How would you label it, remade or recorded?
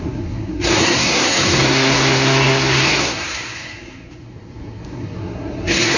remade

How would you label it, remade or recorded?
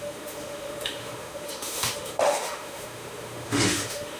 remade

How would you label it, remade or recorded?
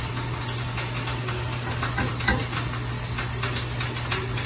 recorded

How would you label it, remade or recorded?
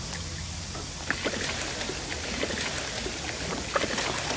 recorded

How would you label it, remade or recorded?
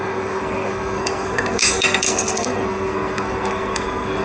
remade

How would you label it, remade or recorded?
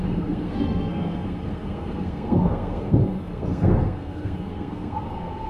remade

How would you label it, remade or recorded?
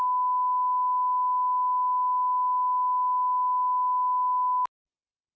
recorded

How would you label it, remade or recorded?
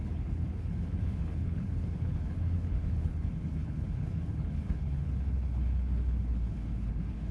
remade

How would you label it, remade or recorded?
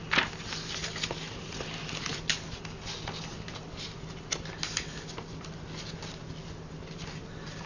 recorded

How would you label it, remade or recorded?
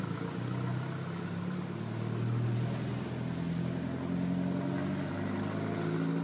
recorded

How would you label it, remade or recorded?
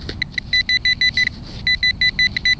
recorded